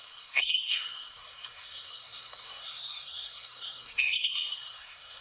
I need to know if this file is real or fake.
fake